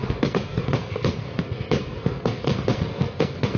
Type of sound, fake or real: fake